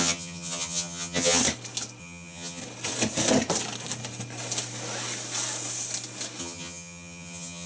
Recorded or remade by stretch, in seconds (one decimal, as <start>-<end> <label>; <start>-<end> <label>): 0.0-1.4 remade; 1.4-2.0 recorded; 2.0-2.6 remade; 2.6-6.4 recorded; 6.4-7.7 remade